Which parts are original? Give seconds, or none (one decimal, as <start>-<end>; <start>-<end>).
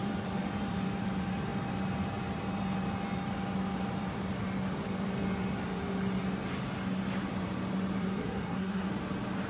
0.0-8.0; 8.9-9.5